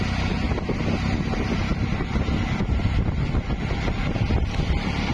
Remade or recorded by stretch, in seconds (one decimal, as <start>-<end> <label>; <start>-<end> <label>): 0.0-5.1 recorded